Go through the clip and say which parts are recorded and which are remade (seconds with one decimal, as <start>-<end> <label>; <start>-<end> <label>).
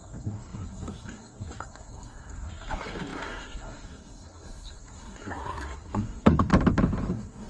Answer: 0.0-6.5 remade; 6.5-7.1 recorded; 7.1-7.5 remade